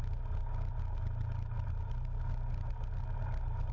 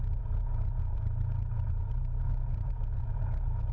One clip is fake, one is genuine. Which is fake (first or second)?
second